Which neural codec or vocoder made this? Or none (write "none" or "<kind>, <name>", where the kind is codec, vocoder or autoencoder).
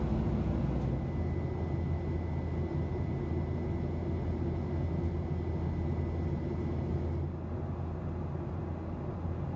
none